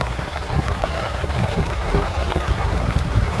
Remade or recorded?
remade